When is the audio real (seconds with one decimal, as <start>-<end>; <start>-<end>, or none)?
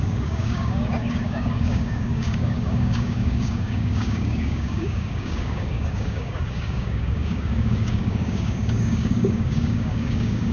none